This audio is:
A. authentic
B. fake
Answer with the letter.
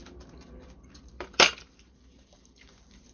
B